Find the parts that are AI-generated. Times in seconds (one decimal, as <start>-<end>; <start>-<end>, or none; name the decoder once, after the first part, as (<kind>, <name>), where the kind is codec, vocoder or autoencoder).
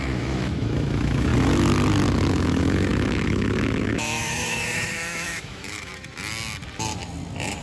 0.0-1.3 (autoencoder, DAC-VAE); 2.3-5.9